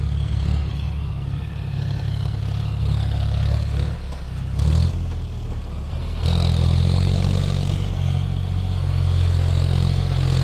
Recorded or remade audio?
remade